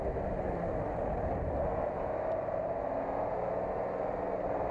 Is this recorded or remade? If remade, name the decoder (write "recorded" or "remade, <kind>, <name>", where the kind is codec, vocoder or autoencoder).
recorded